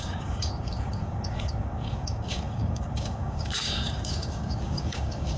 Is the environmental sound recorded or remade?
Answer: remade